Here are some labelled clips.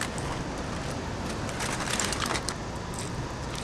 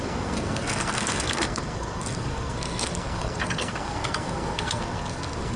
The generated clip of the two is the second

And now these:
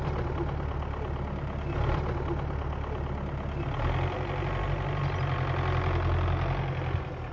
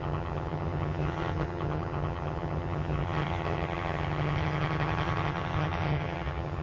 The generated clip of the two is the second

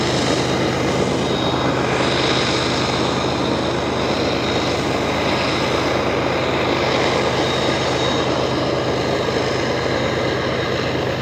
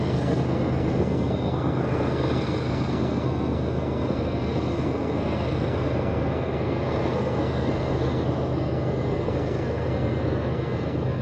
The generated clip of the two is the second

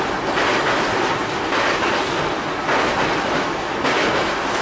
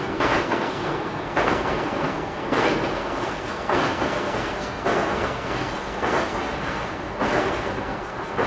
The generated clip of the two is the second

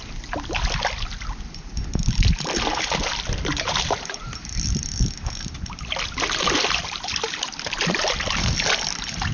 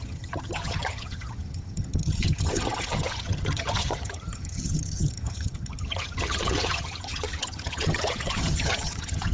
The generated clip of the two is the second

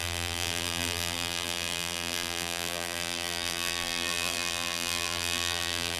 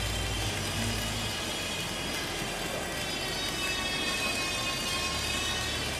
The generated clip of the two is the first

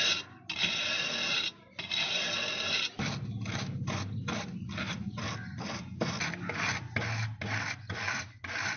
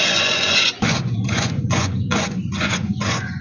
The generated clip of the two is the second